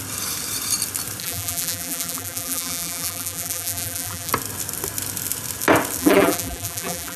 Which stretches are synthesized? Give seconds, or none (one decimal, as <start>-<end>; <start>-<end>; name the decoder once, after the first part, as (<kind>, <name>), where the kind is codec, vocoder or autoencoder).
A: 1.2-4.3 (vocoder, BigVGAN v2); 6.0-7.2